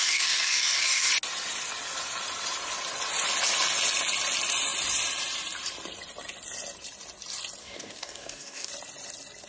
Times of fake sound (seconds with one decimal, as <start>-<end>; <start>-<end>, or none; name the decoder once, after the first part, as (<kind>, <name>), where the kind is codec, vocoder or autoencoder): 0.0-1.1 (codec, DAC); 7.6-8.7